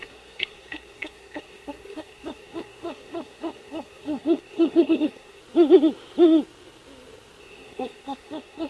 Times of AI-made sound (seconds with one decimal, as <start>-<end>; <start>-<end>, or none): 0.0-5.4; 7.4-8.7